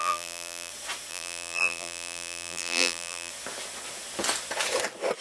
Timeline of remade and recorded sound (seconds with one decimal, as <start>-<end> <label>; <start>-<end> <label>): 0.0-0.7 remade; 0.7-1.1 recorded; 1.1-3.3 remade; 3.3-5.2 recorded